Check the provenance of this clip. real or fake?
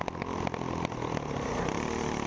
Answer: real